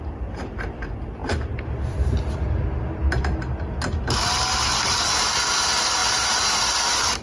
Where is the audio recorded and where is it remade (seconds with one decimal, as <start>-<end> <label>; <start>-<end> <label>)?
0.0-7.2 recorded